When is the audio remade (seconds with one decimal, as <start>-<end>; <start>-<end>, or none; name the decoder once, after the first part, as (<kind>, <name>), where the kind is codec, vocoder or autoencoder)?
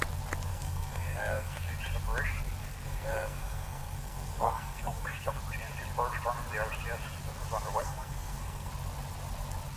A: 0.5-1.7 (codec, SNAC); 2.6-5.4; 7.8-8.7